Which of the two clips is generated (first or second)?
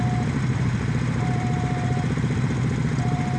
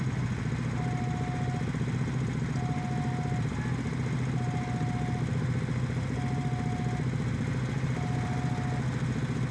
first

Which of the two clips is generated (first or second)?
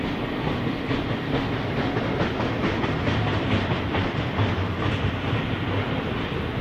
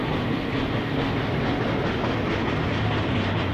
first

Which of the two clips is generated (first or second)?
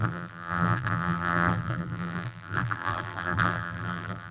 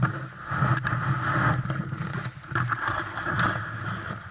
first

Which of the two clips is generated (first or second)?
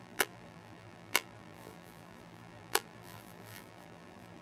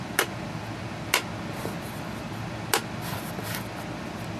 first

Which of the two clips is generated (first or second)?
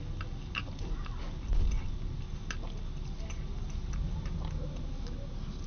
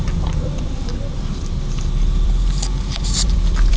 second